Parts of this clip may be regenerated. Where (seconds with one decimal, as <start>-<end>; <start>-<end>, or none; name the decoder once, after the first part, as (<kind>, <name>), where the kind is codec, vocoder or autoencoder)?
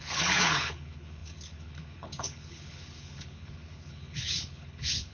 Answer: 0.0-5.1 (codec, HILCodec)